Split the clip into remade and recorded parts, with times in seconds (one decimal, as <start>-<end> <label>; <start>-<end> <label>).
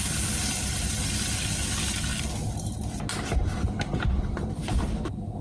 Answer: 0.0-5.4 recorded